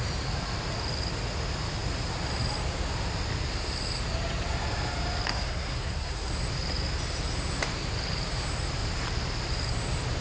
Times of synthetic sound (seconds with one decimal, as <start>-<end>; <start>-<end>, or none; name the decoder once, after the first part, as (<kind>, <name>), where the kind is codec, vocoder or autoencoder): 5.3-6.3 (codec, SNAC)